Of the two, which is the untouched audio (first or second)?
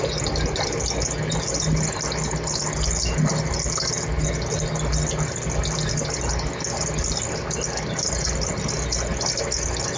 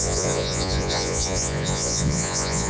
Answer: first